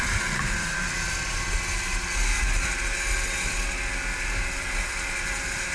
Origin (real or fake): real